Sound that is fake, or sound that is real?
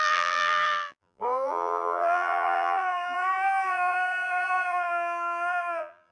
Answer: fake